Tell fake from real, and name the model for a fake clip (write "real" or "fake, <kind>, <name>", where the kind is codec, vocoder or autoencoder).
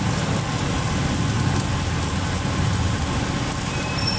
real